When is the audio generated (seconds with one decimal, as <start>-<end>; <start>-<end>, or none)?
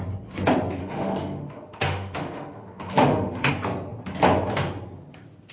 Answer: 0.8-3.5